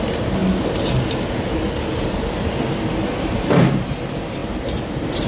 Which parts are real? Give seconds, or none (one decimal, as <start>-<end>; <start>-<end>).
0.4-3.1

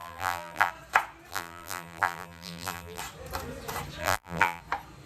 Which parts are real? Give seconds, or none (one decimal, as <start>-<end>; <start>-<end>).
0.7-1.3; 3.0-4.0; 4.6-5.1

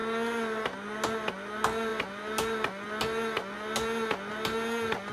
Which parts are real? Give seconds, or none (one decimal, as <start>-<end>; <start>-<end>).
0.0-5.1

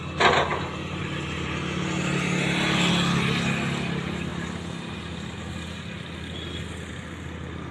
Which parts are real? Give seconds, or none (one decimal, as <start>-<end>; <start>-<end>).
0.0-7.7